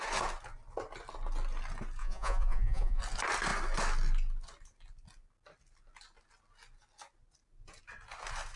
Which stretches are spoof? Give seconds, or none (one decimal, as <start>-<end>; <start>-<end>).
2.0-3.0

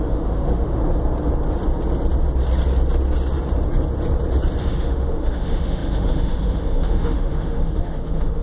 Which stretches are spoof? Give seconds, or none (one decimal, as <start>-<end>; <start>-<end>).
0.0-0.8; 4.6-8.4

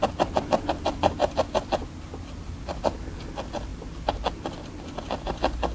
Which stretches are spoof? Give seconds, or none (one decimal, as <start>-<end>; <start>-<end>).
none

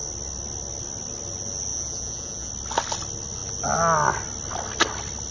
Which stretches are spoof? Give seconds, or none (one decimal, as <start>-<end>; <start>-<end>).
1.7-2.5

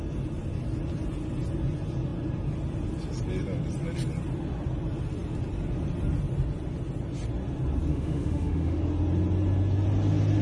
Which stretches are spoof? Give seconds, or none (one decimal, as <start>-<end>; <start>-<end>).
7.9-8.8